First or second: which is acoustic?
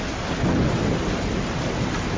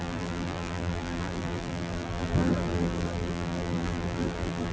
first